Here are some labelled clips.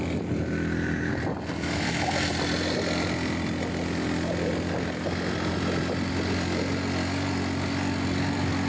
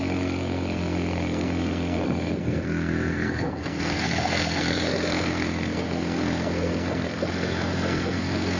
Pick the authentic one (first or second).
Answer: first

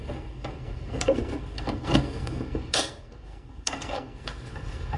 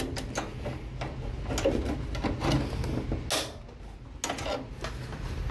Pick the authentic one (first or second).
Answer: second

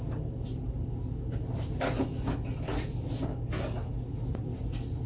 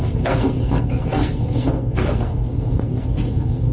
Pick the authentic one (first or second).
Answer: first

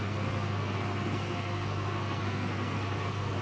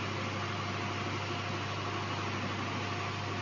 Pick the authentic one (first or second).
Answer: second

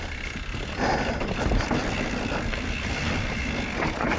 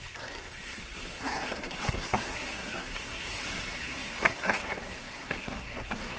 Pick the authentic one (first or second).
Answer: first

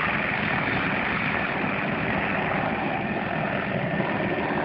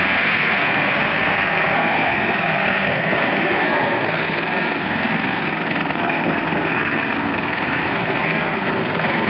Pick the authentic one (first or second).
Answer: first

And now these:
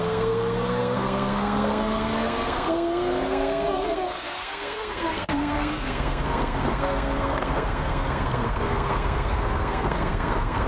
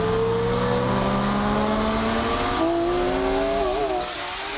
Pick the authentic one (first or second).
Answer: second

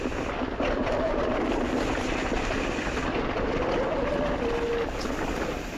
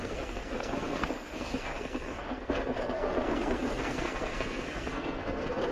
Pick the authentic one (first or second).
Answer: first